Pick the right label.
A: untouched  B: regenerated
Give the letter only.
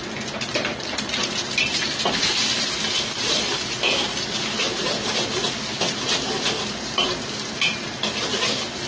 A